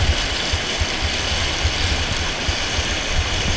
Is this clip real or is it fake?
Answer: real